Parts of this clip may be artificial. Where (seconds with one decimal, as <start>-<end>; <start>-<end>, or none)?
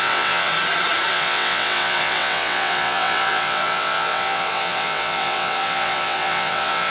0.0-0.5; 1.1-6.9